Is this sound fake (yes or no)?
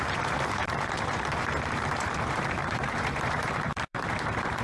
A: yes